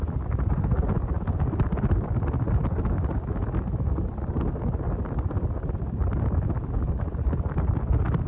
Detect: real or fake real